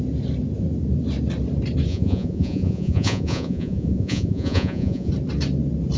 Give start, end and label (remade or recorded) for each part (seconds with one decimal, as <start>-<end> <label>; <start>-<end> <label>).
0.0-1.9 recorded; 1.9-5.1 remade; 5.1-6.0 recorded